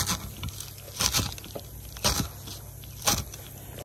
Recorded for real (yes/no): yes